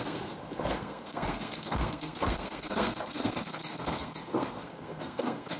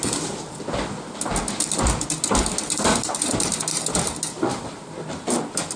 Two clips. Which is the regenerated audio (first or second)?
first